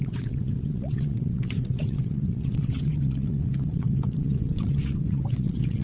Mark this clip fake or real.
fake